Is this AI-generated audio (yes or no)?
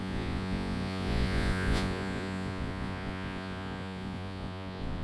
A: yes